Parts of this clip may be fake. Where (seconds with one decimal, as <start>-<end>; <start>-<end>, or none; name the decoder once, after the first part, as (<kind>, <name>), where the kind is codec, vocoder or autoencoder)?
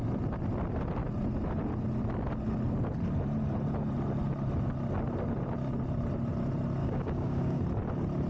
6.8-7.6 (codec, DAC)